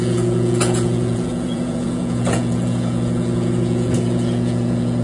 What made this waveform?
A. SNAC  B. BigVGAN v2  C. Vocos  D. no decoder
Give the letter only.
C